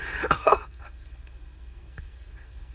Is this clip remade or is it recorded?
remade